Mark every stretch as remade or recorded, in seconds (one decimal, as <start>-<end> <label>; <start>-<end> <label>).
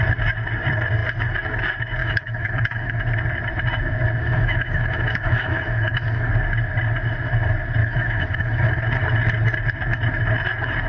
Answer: 0.0-2.0 recorded; 2.0-3.0 remade; 3.0-4.2 recorded; 4.2-6.3 remade; 6.3-7.8 recorded; 7.8-8.8 remade; 8.8-10.9 recorded